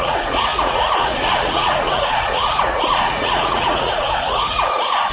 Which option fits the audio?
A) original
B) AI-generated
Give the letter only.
B